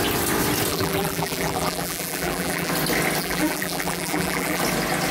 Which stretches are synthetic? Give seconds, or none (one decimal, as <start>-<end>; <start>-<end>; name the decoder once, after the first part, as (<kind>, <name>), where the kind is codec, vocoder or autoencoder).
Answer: 0.7-2.7 (vocoder, BigVGAN v2); 3.2-4.6